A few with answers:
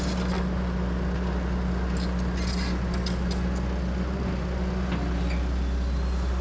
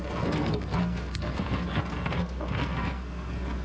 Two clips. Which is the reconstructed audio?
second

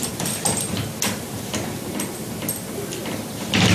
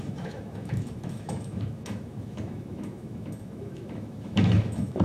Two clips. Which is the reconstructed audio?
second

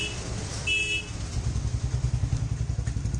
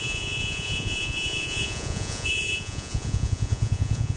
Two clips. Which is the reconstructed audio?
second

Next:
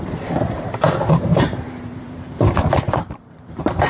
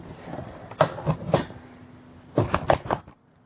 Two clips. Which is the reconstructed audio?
first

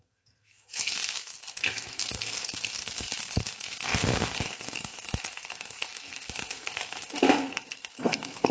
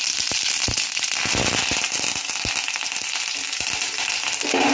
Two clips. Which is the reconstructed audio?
first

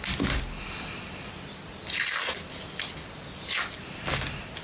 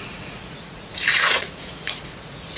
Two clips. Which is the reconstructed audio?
second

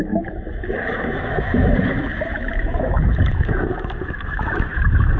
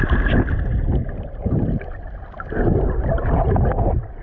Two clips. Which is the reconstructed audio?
first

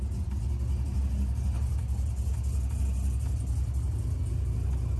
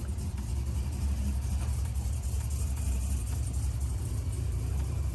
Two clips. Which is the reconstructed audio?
second